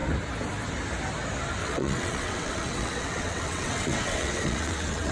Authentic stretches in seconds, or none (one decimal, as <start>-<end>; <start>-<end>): 0.0-1.6